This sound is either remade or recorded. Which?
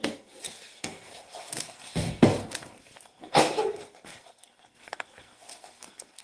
remade